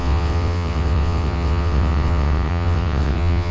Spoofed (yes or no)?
yes